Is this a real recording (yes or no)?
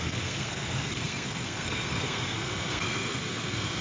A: no